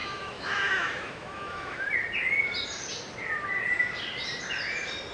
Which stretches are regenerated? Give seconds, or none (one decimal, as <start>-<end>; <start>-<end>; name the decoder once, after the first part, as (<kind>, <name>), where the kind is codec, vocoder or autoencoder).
0.0-1.9 (autoencoder, DAC-VAE)